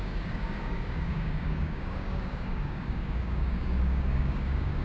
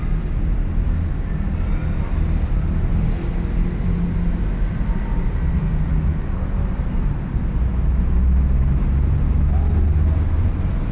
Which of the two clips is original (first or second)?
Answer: second